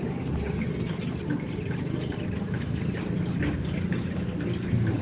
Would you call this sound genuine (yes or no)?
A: yes